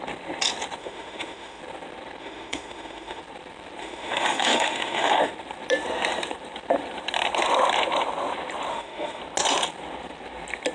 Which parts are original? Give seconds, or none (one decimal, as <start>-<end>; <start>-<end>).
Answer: 0.0-0.8; 1.6-2.2; 3.2-3.8; 5.3-8.7; 9.2-10.7